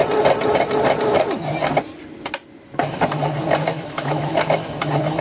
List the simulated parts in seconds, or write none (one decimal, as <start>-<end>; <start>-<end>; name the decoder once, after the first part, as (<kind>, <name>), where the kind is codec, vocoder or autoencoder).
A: 3.7-4.8 (autoencoder, DAC-VAE)